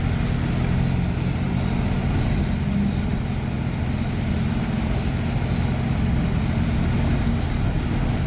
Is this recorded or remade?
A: recorded